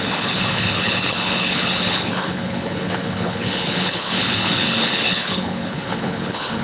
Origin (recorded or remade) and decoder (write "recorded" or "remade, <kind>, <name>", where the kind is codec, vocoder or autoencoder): remade, codec, HILCodec